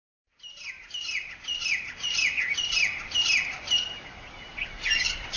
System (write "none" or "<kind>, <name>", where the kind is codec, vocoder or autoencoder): none